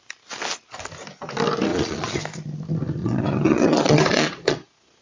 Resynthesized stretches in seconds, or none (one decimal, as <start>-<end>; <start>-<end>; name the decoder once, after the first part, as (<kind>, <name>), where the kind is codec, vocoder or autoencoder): 1.7-2.2 (vocoder, Vocos); 3.0-5.0